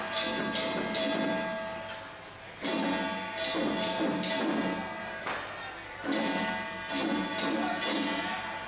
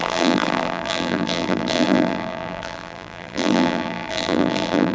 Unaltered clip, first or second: first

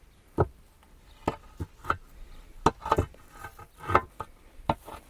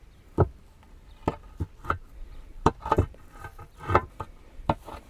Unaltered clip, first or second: first